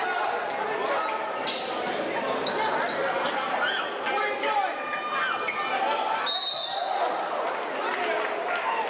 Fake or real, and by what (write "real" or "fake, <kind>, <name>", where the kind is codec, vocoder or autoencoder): real